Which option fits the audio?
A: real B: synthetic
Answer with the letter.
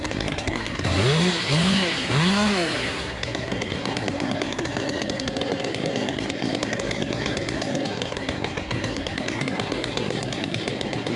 B